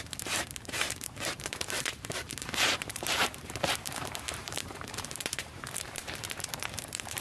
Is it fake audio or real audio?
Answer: fake